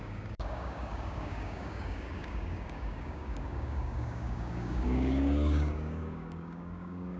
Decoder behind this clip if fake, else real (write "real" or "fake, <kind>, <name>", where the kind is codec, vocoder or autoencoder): fake, codec, DAC